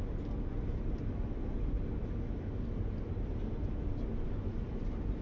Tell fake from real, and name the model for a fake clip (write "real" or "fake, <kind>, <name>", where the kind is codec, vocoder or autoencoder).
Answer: real